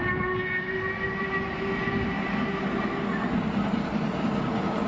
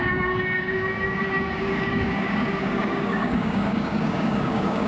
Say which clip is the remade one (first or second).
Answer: second